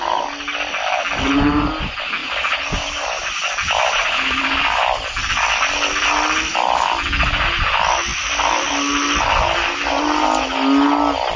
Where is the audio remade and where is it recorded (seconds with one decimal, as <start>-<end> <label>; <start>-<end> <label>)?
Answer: 0.0-2.2 recorded; 2.2-4.8 remade; 4.8-11.4 recorded